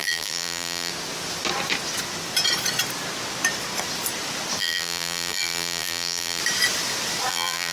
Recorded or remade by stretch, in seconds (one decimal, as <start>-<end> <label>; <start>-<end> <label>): 0.0-0.9 remade; 0.9-4.6 recorded; 4.6-6.4 remade; 6.4-7.3 recorded; 7.3-7.7 remade